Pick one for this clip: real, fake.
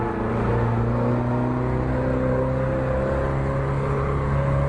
real